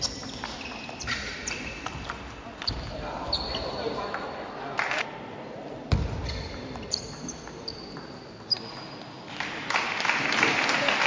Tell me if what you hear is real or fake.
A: real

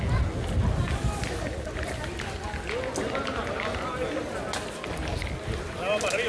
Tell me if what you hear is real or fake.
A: real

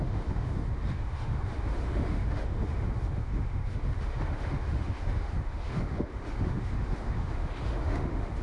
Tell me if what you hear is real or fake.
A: fake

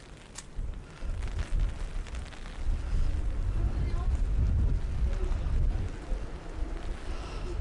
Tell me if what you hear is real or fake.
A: real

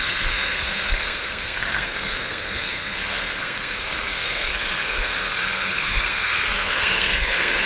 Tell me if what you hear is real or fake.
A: fake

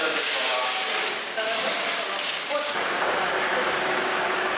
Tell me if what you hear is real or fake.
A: fake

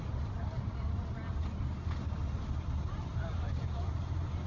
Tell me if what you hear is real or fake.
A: real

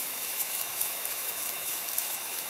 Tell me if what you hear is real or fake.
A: fake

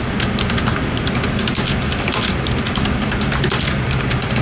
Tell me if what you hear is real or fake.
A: real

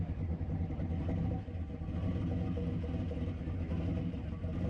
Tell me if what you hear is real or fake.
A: real